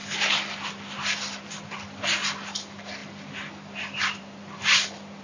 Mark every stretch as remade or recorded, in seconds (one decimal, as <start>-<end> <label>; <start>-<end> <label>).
0.0-5.2 recorded